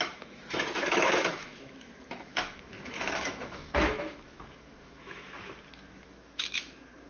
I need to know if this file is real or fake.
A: fake